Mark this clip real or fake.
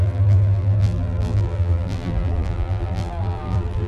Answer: fake